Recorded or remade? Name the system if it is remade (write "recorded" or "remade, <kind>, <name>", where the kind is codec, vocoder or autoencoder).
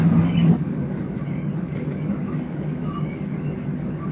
remade, codec, DAC